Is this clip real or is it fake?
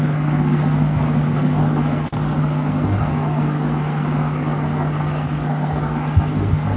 fake